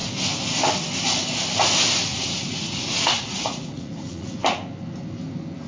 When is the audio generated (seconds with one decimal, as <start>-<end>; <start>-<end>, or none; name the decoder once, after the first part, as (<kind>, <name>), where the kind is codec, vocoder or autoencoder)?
2.1-4.4 (vocoder, Vocos)